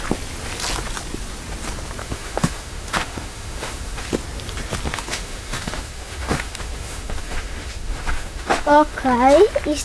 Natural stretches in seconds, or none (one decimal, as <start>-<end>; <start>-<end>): 0.0-2.0; 4.1-4.9; 9.0-9.8